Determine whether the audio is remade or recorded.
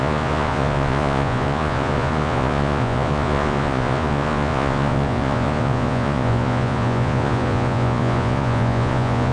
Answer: remade